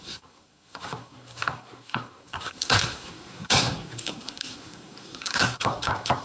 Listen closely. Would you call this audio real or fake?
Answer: fake